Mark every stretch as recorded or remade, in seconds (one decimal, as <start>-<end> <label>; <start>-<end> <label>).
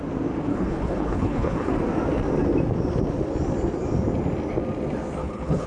0.0-0.5 recorded; 0.5-1.7 remade; 1.7-5.2 recorded; 5.2-5.7 remade